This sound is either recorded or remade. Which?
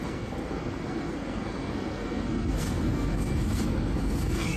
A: remade